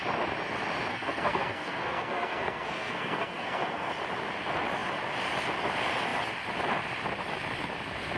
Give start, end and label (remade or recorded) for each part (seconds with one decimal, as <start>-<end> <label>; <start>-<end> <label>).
0.0-0.9 recorded; 0.9-3.9 remade; 3.9-8.2 recorded